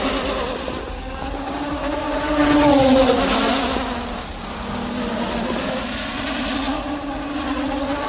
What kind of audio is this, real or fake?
real